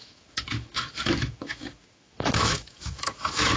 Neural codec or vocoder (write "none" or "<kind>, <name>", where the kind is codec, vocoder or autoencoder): autoencoder, DAC-VAE